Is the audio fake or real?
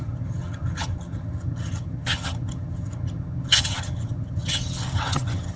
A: fake